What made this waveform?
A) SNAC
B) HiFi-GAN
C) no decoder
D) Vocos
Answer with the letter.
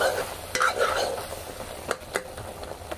C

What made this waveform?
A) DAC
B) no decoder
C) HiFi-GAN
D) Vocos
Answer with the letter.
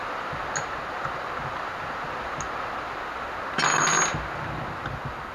B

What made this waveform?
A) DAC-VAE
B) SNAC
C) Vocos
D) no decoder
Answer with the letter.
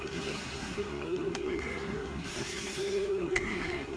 B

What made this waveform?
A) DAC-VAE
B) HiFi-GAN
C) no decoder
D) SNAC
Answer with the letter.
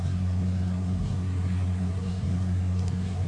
D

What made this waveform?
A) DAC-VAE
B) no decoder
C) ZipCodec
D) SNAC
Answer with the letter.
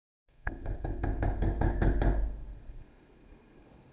D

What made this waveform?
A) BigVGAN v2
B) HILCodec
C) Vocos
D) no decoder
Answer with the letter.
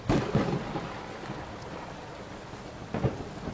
D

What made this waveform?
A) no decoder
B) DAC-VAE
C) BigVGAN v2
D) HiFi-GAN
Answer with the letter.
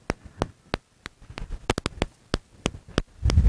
A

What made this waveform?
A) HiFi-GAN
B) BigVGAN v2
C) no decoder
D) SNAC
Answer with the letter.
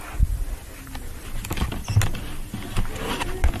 C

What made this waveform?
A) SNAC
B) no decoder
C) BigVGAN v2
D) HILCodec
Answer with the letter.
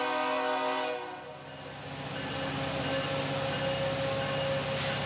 B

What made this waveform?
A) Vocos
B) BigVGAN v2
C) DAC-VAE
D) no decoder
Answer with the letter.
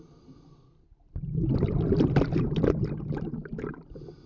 D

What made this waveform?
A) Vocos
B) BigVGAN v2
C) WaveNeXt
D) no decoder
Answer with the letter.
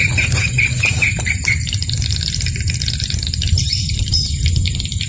B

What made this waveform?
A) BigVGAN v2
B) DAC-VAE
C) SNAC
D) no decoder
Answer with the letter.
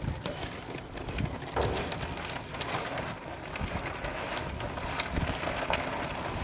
D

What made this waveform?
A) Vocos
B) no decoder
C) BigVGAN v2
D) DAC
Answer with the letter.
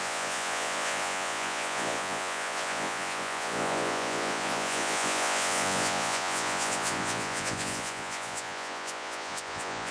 A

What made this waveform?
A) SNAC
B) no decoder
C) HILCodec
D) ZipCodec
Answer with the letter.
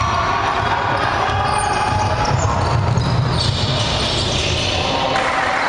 B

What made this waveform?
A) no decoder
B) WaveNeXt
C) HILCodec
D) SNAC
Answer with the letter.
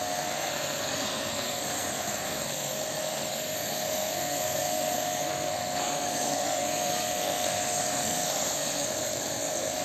D